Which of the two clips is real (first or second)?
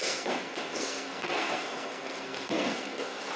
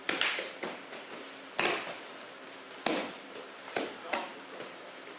second